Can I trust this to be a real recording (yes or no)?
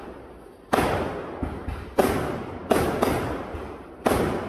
yes